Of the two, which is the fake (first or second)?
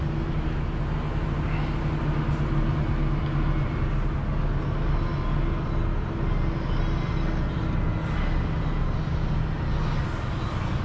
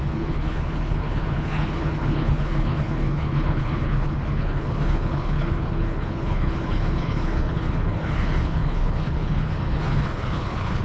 second